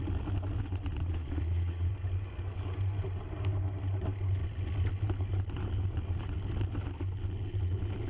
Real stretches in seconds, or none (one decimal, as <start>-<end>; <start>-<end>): 0.0-0.9; 1.9-8.1